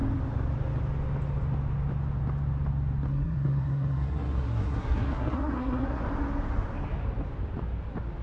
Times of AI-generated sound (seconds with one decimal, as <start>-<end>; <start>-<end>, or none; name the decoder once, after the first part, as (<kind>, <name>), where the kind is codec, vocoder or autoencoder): 3.1-6.0 (codec, SNAC)